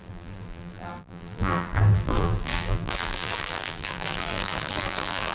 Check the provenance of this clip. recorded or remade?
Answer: remade